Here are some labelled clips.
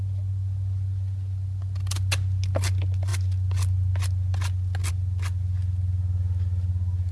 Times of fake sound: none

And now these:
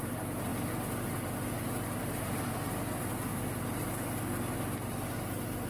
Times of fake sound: none

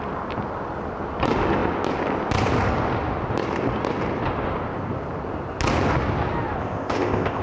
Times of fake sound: 6.6-7.4

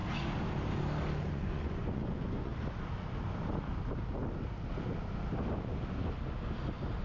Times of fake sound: 1.3-2.5